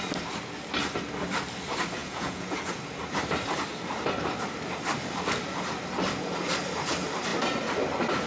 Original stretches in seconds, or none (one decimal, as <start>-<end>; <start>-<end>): 0.0-2.0; 2.7-8.3